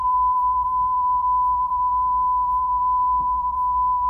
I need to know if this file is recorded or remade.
remade